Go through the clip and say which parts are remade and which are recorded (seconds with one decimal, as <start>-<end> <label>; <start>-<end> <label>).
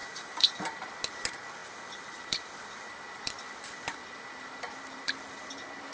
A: 0.0-0.9 remade; 0.9-1.6 recorded; 1.6-5.1 remade; 5.1-5.9 recorded